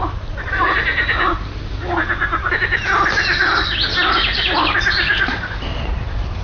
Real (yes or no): yes